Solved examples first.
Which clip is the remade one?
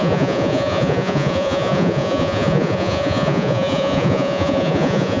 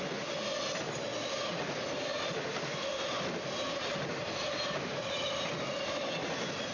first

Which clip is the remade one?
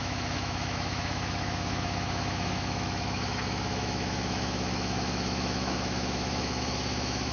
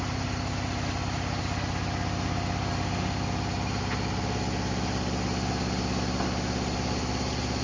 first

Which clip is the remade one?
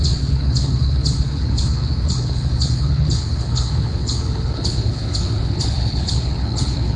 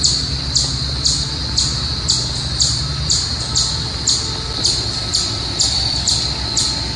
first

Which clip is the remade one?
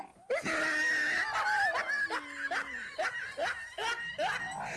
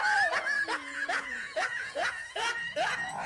second